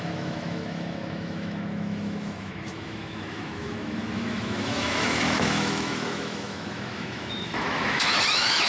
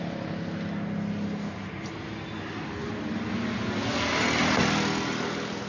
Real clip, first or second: second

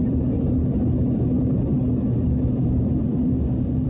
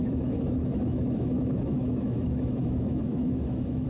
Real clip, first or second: first